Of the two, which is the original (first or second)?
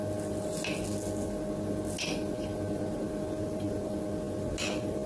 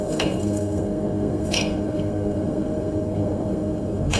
first